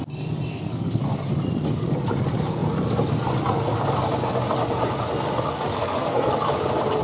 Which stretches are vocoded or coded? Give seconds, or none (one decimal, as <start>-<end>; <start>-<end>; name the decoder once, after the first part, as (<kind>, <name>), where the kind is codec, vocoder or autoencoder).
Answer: 0.5-1.0 (codec, SNAC); 5.7-6.3